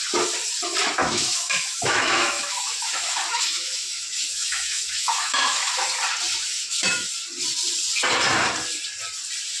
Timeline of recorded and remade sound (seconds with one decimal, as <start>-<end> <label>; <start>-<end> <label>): 0.0-1.0 recorded; 1.0-5.7 remade; 5.7-6.4 recorded; 6.4-7.1 remade; 7.1-9.6 recorded